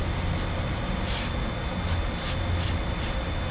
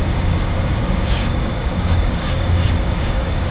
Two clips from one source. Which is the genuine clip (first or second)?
first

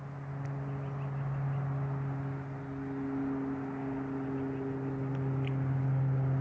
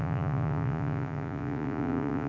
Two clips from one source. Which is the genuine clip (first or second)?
first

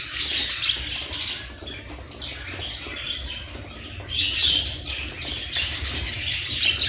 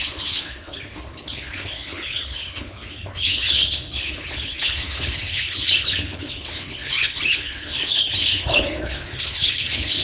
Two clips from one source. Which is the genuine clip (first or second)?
first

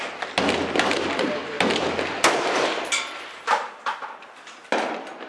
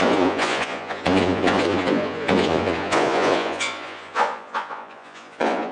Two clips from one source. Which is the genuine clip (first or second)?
first